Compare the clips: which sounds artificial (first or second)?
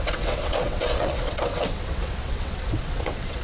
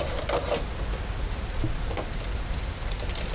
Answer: first